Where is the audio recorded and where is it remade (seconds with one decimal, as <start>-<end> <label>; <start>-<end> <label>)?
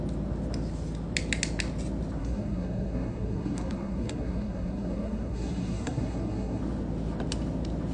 0.0-2.2 recorded; 2.2-6.6 remade; 6.6-7.9 recorded